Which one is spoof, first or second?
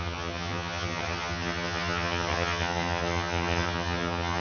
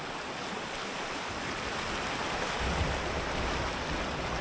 first